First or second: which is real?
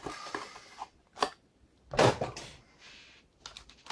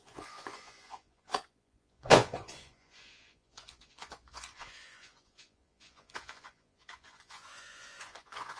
first